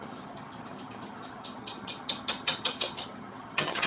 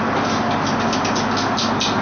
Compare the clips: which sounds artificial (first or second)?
first